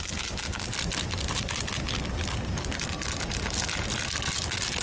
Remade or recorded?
recorded